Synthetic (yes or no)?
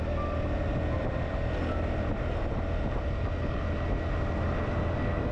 no